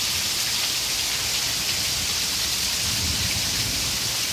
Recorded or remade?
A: recorded